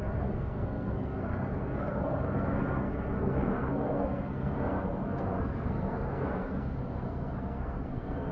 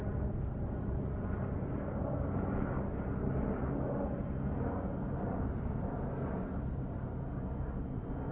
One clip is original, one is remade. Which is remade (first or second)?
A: first